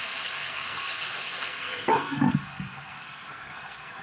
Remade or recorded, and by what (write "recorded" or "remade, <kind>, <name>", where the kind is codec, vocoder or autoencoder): remade, codec, SNAC